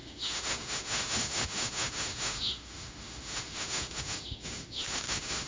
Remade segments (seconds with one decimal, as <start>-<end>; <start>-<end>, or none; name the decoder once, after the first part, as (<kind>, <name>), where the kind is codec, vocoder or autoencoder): 0.0-5.5 (autoencoder, DAC-VAE)